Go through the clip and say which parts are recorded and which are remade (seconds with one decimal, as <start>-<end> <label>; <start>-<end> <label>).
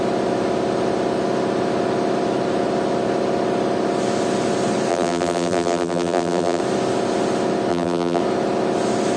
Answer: 0.0-4.9 recorded; 4.9-6.6 remade; 6.6-7.7 recorded; 7.7-8.2 remade; 8.2-9.2 recorded